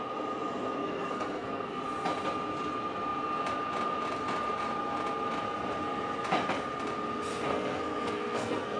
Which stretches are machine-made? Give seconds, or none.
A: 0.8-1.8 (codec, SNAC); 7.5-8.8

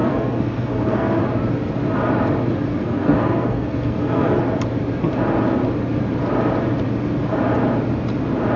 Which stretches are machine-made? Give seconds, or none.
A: 0.0-1.2 (codec, SNAC); 2.8-4.4